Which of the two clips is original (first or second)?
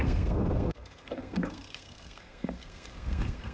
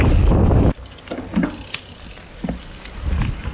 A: second